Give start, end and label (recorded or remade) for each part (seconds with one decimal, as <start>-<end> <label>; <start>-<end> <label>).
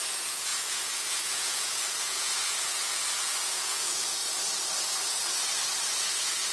0.0-4.2 remade; 4.2-5.9 recorded; 5.9-6.5 remade